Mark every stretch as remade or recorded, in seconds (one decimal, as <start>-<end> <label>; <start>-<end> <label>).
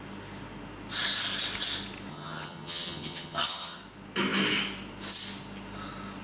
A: 0.0-2.1 recorded; 2.1-3.8 remade; 3.8-6.2 recorded